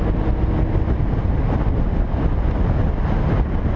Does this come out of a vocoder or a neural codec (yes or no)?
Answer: no